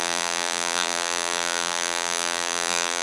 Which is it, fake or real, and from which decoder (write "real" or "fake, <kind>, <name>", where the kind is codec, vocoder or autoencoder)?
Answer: fake, vocoder, BigVGAN v2